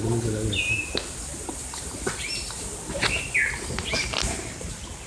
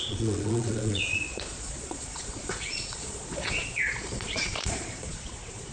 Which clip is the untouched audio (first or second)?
first